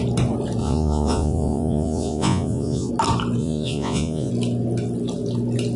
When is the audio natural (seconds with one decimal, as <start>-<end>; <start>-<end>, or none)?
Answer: 0.0-0.6; 2.9-3.4; 4.3-5.8